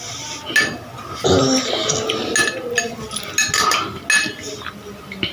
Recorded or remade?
recorded